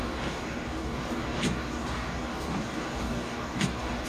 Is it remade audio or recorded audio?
remade